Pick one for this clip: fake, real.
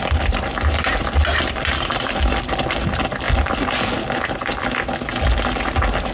real